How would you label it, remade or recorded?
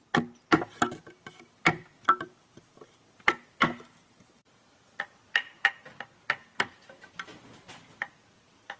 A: recorded